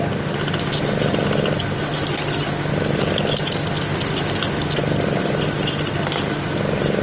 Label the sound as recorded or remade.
recorded